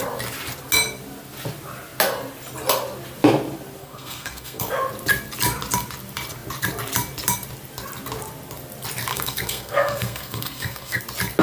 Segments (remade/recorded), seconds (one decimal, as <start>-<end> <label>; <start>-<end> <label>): 0.0-3.8 recorded; 3.8-4.7 remade; 4.7-9.1 recorded; 9.1-11.0 remade; 11.0-11.4 recorded